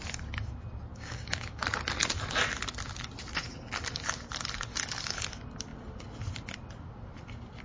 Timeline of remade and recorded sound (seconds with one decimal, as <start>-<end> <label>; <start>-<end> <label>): 0.0-0.9 recorded; 0.9-1.6 remade; 1.6-7.6 recorded